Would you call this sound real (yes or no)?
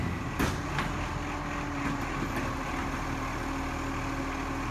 yes